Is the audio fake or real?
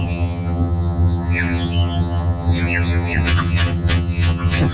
fake